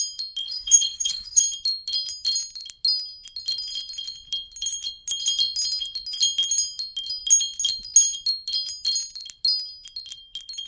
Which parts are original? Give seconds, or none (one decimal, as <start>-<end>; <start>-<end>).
0.0-0.4; 1.4-10.7